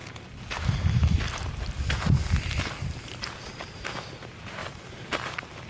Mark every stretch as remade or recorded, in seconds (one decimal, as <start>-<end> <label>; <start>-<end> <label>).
0.0-3.4 recorded; 3.4-4.6 remade; 4.6-5.7 recorded